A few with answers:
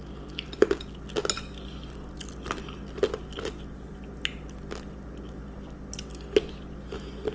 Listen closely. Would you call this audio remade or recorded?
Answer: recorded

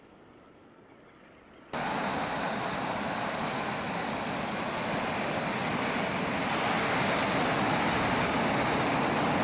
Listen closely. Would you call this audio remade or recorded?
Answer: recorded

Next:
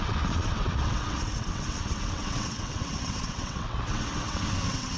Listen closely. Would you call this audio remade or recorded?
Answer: remade